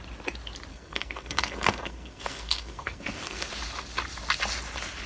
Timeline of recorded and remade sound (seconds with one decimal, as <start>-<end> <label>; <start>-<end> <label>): 0.0-0.7 recorded; 0.7-3.5 remade; 3.5-5.1 recorded